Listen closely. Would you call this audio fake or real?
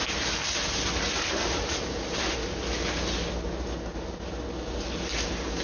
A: real